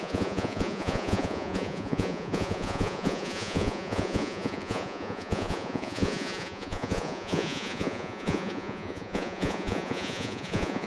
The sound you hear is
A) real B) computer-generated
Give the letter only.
B